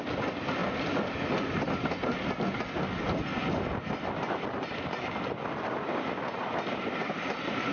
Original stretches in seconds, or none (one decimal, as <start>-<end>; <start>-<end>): 0.0-7.7